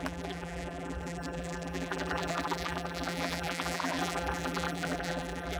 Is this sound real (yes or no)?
no